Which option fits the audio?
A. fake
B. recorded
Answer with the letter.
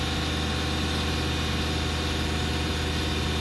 B